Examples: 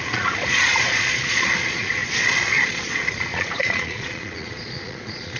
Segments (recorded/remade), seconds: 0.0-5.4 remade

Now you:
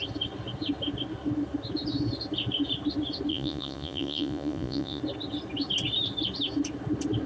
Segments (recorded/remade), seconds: 0.0-3.3 recorded; 3.3-5.0 remade; 5.0-7.3 recorded

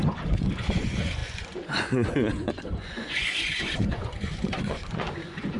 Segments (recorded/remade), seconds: 0.0-5.6 remade